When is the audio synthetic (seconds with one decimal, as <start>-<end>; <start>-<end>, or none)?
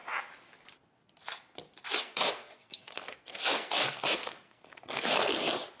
2.0-5.3